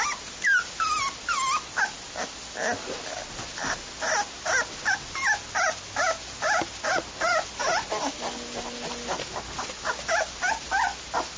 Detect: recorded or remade recorded